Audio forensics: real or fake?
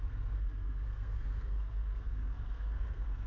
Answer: fake